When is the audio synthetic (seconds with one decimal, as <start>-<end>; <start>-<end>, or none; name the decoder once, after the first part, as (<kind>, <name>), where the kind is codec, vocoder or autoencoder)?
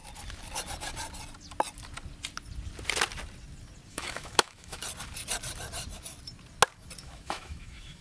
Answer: 3.9-4.8 (autoencoder, DAC-VAE); 7.0-8.0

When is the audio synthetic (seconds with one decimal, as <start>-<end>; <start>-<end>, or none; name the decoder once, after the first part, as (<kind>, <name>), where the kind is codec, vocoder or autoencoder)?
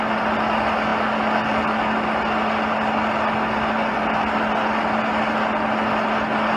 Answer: none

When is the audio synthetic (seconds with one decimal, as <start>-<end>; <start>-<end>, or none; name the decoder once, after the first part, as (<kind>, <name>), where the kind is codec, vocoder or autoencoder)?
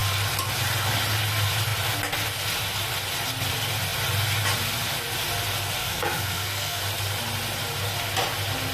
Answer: 5.8-6.8 (codec, SNAC)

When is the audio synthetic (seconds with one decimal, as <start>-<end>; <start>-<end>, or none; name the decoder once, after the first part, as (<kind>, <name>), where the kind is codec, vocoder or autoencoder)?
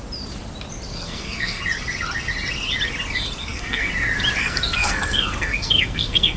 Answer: 0.9-1.6 (codec, SNAC); 3.4-3.9; 4.4-6.4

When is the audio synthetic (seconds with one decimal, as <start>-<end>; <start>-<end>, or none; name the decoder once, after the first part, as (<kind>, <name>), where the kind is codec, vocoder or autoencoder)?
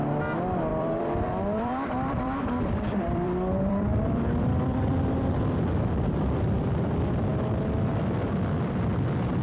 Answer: 0.7-5.4 (vocoder, BigVGAN v2)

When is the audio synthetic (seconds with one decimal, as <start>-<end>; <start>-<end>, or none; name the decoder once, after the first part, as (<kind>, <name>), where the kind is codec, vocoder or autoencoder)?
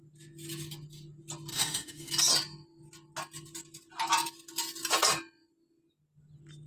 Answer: 1.5-2.1 (autoencoder, DAC-VAE)